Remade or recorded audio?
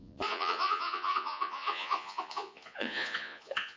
remade